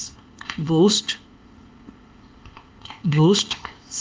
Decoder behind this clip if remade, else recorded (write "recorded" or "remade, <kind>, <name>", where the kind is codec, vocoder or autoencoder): remade, codec, ZipCodec